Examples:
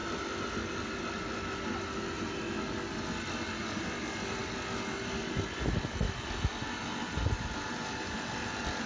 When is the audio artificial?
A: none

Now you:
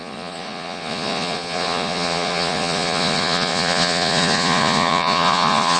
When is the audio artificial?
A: 0.0-5.8 (vocoder, Vocos)

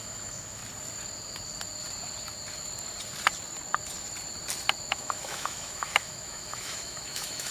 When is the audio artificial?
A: 0.0-0.6 (autoencoder, DAC-VAE); 4.9-7.5

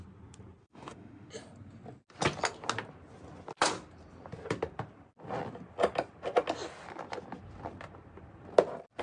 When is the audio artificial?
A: 0.6-1.3 (autoencoder, DAC-VAE)

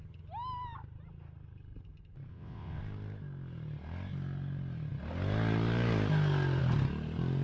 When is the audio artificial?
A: 2.3-2.8 (vocoder, WaveNeXt)

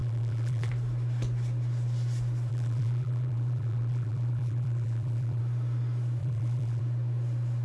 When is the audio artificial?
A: 0.0-0.7 (vocoder, BigVGAN v2); 2.5-5.4; 6.2-6.8

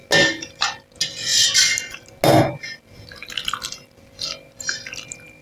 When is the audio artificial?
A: none